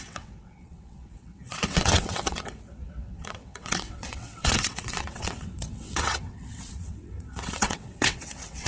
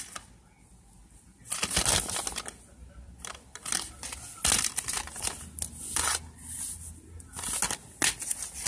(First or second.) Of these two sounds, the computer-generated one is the first